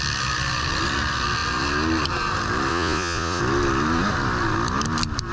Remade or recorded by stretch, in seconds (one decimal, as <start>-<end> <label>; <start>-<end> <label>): 0.0-2.7 recorded; 2.7-3.4 remade; 3.4-5.3 recorded